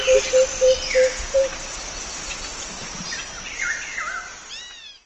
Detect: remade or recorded recorded